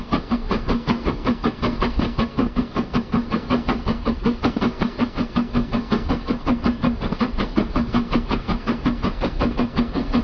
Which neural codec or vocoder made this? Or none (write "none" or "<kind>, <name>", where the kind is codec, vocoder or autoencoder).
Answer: codec, SNAC